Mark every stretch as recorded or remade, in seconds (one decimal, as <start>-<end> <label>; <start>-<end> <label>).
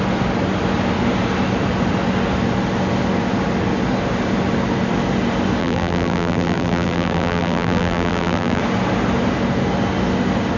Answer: 0.0-5.6 recorded; 5.6-8.6 remade; 8.6-10.6 recorded